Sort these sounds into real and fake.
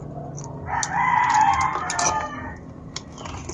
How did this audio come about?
real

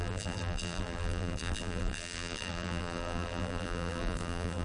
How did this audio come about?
fake